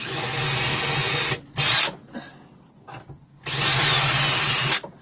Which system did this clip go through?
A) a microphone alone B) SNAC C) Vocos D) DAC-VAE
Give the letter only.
A